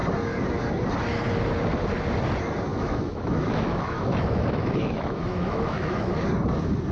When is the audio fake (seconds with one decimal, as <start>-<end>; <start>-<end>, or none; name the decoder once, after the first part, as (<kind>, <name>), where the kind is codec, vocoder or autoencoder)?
2.7-6.2 (autoencoder, DAC-VAE)